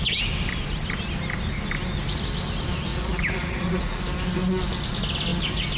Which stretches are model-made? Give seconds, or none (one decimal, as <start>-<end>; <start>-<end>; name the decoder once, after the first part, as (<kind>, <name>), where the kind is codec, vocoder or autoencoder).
2.9-4.0 (vocoder, Vocos)